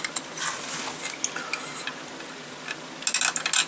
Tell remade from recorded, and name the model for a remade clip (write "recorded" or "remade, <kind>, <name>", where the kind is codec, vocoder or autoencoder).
recorded